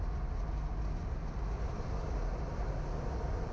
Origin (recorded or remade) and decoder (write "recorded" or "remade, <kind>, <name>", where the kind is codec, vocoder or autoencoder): recorded